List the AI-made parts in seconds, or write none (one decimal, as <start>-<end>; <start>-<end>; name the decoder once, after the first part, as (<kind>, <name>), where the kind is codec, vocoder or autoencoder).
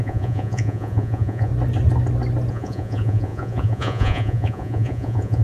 0.0-1.5 (vocoder, Vocos); 2.5-5.4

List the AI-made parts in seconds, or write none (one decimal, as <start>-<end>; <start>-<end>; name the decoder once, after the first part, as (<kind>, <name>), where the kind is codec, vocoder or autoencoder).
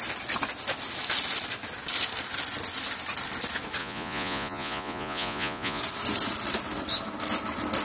3.8-5.8 (vocoder, Vocos)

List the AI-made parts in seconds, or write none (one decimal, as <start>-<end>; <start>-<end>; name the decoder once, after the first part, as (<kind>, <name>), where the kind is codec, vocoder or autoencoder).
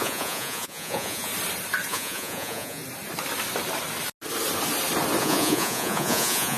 0.0-1.3 (vocoder, Vocos); 1.9-2.8; 5.2-6.6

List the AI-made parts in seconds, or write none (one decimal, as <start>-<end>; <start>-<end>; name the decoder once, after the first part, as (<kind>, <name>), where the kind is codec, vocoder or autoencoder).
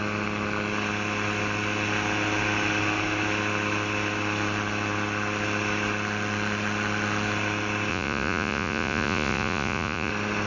7.9-10.1 (vocoder, Vocos)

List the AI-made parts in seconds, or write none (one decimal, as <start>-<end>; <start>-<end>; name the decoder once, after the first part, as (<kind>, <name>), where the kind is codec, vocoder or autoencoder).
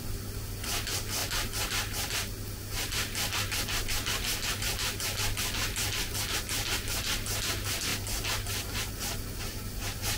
none